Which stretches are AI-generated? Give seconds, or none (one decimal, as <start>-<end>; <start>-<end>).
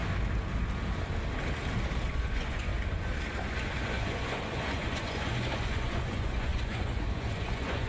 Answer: 2.1-2.7; 3.4-7.9